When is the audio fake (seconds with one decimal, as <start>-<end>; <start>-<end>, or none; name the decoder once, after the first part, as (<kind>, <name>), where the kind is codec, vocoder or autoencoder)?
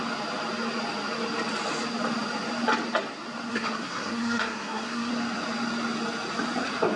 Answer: 3.5-5.1 (codec, SNAC)